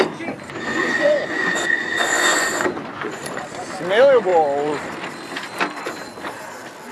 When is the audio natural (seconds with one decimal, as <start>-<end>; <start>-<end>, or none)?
0.0-0.7; 3.6-6.9